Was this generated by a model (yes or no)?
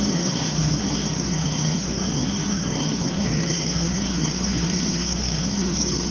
yes